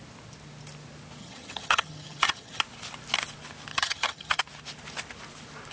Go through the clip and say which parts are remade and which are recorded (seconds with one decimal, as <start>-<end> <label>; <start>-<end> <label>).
0.0-1.2 recorded; 1.2-2.6 remade; 2.6-3.7 recorded; 3.7-4.4 remade; 4.4-5.7 recorded